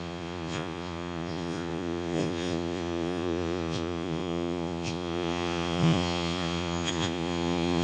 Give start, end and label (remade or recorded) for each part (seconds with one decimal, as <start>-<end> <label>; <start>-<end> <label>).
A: 0.0-7.8 remade